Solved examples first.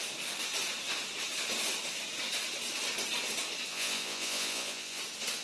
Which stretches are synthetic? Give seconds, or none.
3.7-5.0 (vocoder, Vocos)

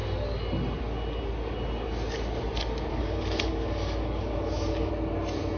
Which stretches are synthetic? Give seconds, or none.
2.9-4.9 (codec, DAC)